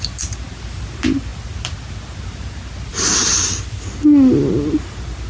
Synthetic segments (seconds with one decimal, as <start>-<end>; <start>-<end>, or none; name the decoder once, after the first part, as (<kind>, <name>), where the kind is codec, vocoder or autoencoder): none